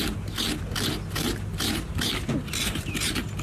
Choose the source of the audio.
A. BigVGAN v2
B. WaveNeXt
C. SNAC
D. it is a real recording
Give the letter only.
D